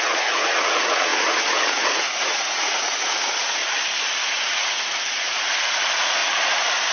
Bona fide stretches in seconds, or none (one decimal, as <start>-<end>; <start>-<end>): 3.6-4.2; 6.2-6.9